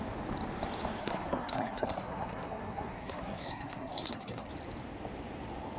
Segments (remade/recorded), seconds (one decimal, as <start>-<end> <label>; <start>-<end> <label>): 0.0-1.0 recorded; 1.0-4.5 remade; 4.5-5.8 recorded